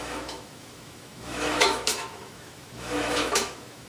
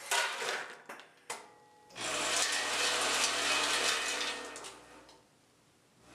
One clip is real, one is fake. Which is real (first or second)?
second